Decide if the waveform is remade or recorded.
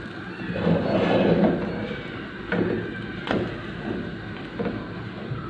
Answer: recorded